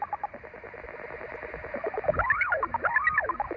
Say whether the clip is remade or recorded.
recorded